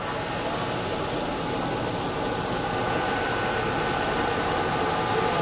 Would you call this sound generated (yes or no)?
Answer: no